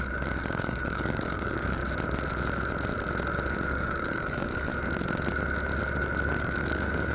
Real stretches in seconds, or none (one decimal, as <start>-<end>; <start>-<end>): 1.8-3.7; 4.7-6.4